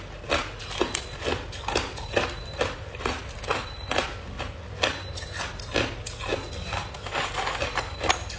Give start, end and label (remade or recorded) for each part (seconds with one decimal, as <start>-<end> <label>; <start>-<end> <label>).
0.0-0.4 recorded; 0.4-4.0 remade; 4.0-8.4 recorded